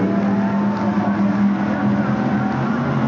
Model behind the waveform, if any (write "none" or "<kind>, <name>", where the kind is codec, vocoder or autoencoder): none